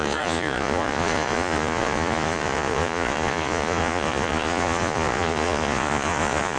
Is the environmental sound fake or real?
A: fake